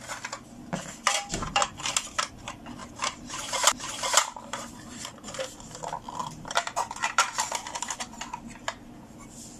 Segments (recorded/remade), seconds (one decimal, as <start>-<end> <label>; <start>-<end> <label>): 0.0-2.8 recorded; 2.8-5.4 remade; 5.4-6.2 recorded; 6.2-7.2 remade; 7.2-9.6 recorded